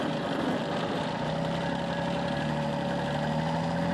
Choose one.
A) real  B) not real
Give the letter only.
A